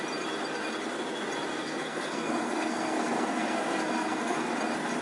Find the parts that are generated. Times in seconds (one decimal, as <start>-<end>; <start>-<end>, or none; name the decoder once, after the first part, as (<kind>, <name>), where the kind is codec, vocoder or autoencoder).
1.5-4.5 (codec, SNAC)